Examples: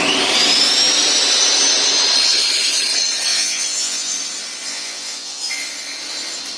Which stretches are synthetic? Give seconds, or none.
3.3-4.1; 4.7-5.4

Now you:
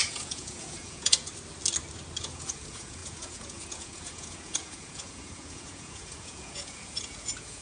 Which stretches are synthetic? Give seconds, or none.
0.0-1.3; 2.2-7.6